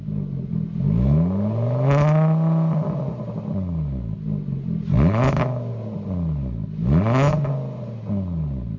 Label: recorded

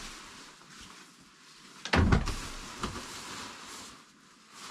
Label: recorded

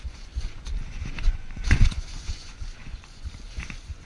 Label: remade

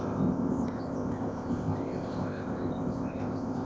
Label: remade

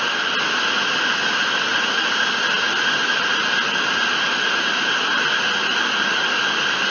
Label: recorded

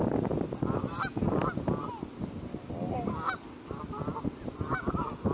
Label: recorded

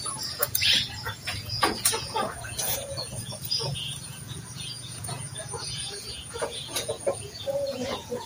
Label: remade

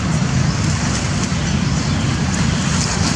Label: recorded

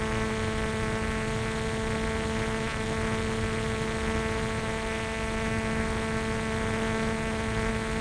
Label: recorded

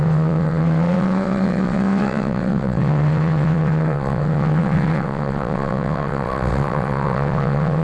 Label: remade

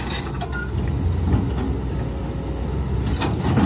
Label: recorded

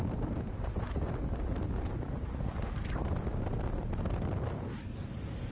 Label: recorded